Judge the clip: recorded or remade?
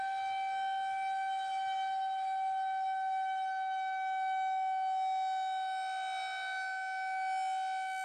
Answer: recorded